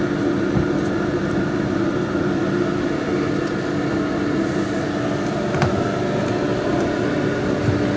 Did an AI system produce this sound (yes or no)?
no